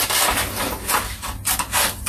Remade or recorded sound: recorded